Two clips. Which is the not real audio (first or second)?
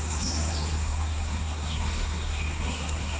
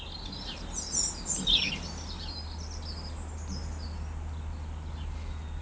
first